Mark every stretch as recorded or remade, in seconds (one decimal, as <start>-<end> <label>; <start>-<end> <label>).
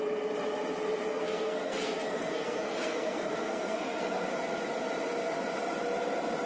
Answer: 0.0-1.1 recorded; 1.1-4.3 remade; 4.3-6.5 recorded